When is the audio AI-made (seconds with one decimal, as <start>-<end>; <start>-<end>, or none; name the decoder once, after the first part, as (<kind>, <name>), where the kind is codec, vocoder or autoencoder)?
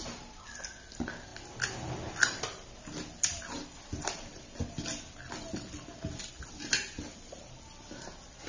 none